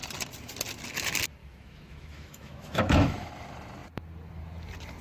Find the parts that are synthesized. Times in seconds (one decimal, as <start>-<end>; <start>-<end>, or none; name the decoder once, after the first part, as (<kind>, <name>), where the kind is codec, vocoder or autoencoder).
1.4-3.3 (autoencoder, DAC-VAE)